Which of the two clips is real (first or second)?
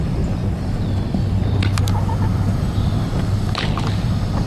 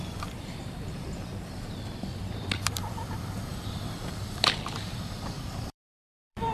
first